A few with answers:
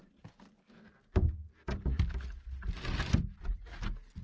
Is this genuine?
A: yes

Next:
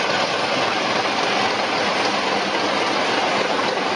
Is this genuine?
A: yes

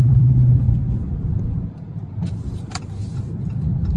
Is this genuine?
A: no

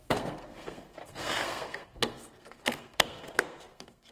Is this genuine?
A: no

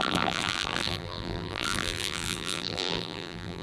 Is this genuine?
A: no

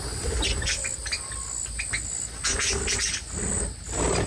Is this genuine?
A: yes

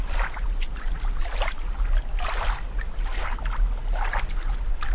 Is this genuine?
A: yes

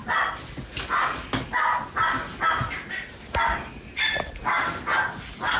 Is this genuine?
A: yes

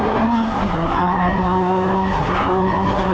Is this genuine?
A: no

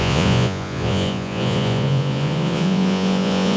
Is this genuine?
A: no